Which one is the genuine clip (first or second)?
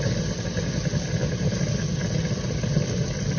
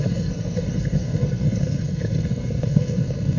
first